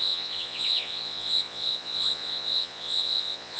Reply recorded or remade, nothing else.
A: remade